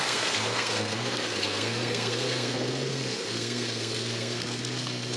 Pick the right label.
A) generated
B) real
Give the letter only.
A